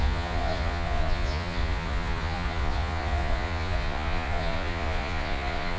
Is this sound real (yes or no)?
no